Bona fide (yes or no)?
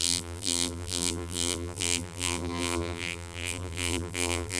no